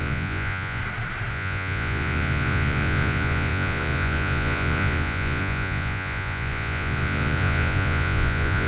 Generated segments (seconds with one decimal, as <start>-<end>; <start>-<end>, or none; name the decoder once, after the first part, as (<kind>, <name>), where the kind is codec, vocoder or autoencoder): 0.0-0.8 (vocoder, Vocos); 1.3-8.7